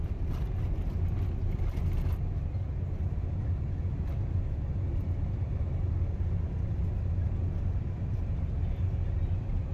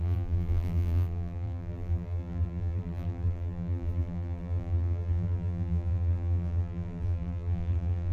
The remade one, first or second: second